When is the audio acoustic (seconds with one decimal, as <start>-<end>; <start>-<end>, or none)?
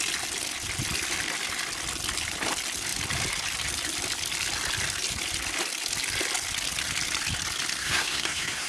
0.0-7.8